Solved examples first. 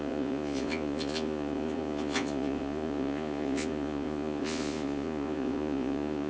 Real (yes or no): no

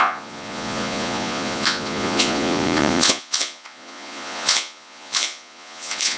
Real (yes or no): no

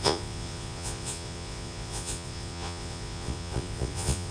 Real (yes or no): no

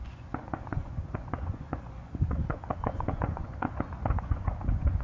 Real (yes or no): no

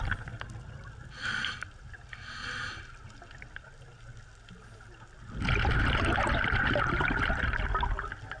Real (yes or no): yes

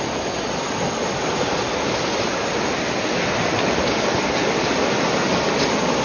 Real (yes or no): yes